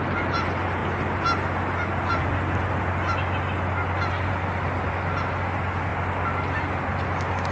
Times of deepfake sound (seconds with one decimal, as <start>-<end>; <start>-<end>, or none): none